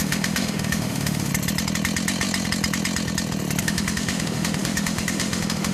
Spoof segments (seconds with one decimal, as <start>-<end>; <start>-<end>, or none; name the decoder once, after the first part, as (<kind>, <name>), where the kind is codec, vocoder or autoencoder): 0.0-1.3 (autoencoder, DAC-VAE); 3.6-5.7